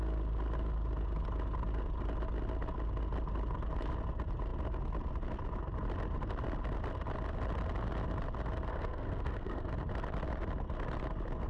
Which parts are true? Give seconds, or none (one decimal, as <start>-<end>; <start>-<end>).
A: 0.0-8.7; 9.7-11.5